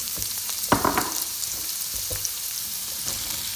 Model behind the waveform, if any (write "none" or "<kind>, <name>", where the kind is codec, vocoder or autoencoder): vocoder, BigVGAN v2